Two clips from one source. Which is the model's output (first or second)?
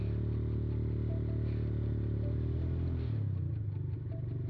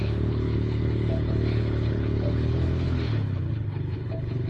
second